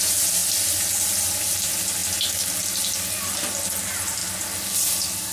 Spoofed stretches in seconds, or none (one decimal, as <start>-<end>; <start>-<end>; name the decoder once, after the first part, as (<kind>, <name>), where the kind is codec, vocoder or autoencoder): none